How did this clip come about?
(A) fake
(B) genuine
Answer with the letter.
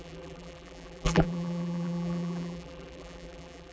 A